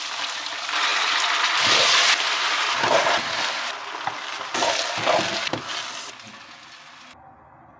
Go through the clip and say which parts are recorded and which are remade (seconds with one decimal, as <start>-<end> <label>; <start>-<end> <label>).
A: 0.0-7.8 recorded